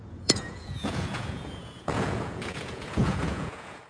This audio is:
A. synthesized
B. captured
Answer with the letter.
A